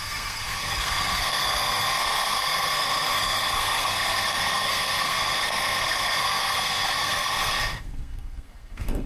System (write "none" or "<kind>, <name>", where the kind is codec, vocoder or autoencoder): codec, SNAC